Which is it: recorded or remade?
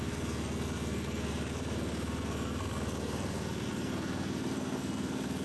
remade